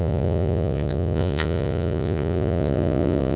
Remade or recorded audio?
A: remade